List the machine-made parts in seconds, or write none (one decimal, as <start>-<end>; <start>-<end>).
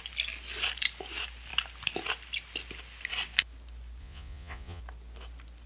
4.0-4.8